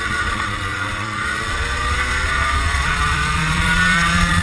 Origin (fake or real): fake